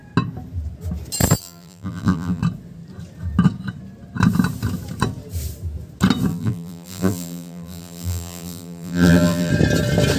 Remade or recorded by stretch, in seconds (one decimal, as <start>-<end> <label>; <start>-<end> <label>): 0.0-1.4 recorded; 1.4-2.4 remade; 2.4-6.3 recorded; 6.3-9.5 remade; 9.5-10.2 recorded